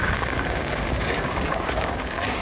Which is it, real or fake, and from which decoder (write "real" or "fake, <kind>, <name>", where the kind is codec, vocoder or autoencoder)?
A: fake, codec, DAC